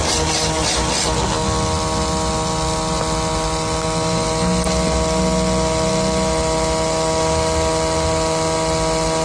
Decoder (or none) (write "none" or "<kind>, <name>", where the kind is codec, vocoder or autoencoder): none